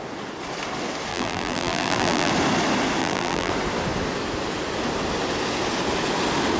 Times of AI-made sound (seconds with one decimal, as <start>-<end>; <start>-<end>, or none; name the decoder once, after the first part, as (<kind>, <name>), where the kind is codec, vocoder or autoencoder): 1.1-2.3 (vocoder, BigVGAN v2); 3.0-3.5